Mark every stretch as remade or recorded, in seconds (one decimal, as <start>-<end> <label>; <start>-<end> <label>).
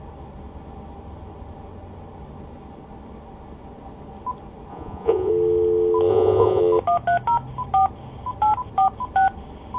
0.0-4.7 recorded; 4.7-5.3 remade; 5.3-6.1 recorded; 6.1-6.6 remade; 6.6-9.8 recorded